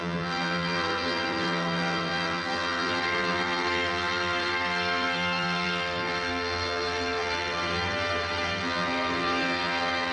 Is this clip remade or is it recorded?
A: remade